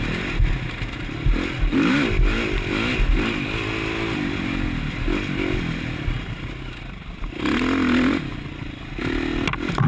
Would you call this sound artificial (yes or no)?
no